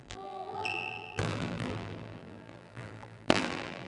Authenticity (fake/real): fake